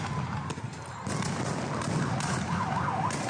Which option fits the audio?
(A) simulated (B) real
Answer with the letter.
B